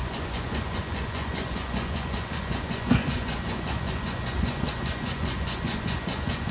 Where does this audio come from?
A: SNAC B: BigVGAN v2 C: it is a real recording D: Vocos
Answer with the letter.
D